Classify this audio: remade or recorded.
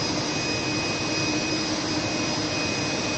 recorded